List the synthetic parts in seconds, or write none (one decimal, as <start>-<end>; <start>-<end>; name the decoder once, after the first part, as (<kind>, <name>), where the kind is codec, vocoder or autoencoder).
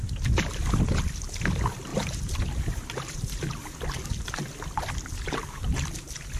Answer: none